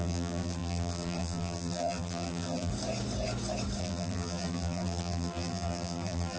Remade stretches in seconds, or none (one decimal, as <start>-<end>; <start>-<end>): 0.0-2.7; 3.8-6.4